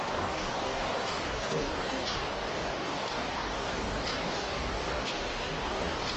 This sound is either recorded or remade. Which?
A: remade